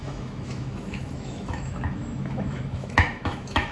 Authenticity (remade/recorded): remade